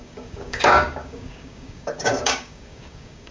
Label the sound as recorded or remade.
remade